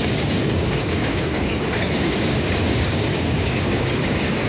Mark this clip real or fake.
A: fake